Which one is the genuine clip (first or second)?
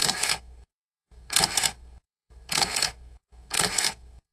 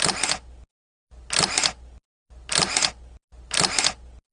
second